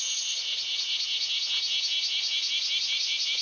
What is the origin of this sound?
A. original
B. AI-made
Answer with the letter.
A